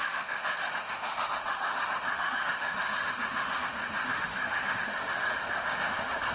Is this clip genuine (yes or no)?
no